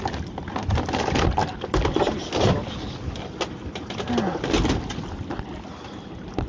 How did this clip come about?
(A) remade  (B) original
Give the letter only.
B